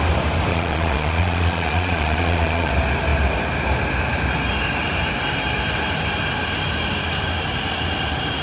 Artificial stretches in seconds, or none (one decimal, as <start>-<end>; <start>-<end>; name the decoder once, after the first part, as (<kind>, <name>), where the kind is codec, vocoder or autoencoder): 0.5-2.7 (vocoder, Vocos)